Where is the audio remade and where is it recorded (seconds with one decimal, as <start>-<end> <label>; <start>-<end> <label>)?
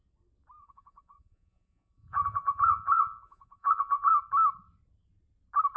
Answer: 0.0-0.6 recorded; 0.6-4.1 remade; 4.1-5.8 recorded